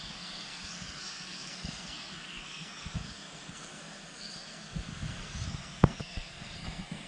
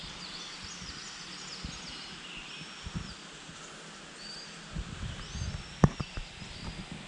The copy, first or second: first